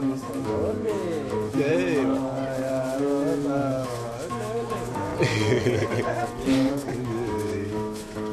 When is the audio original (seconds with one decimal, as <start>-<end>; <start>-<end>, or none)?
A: 1.7-2.7; 5.1-6.7